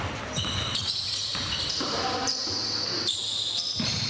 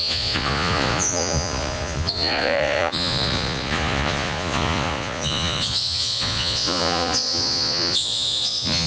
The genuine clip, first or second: first